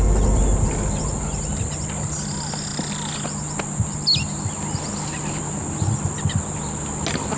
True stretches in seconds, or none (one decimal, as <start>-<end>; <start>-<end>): 0.0-7.4